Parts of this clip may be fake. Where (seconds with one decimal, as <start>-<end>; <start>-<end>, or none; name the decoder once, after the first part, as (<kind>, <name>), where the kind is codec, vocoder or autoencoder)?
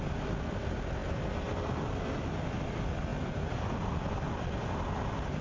none